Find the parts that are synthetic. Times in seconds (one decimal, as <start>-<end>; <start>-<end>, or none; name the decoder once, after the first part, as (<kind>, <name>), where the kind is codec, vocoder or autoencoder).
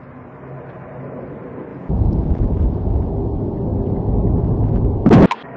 1.7-3.1 (vocoder, Vocos)